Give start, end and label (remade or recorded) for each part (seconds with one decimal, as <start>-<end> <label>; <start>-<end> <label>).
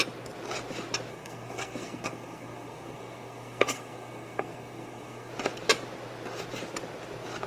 0.0-1.1 recorded; 1.1-5.3 remade; 5.3-7.5 recorded